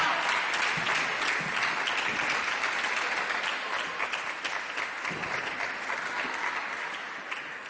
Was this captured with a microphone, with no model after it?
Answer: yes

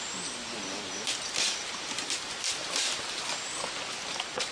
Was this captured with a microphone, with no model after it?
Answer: yes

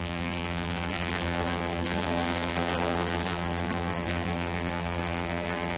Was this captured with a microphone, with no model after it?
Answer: no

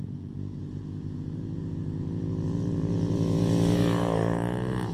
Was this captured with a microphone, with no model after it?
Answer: no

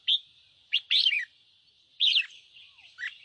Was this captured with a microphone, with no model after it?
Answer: no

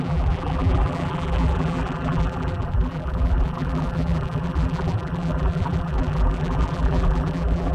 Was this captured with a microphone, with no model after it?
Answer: no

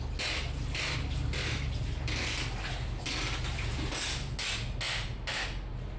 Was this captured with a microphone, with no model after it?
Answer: yes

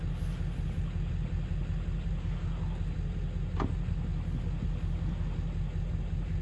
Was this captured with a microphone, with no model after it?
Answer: yes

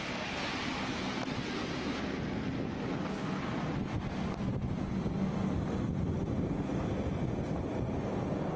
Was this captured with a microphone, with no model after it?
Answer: yes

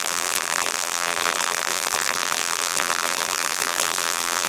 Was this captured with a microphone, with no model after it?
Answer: no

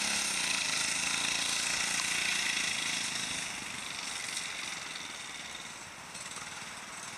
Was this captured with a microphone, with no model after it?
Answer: yes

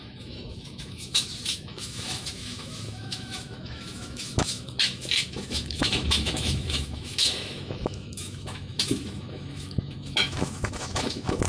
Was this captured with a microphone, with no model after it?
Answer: no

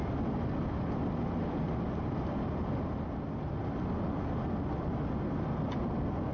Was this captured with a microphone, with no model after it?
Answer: yes